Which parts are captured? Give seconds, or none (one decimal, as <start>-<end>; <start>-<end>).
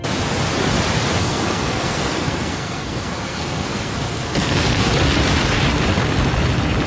0.0-1.2; 4.9-6.9